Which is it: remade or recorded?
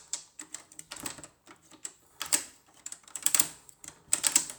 remade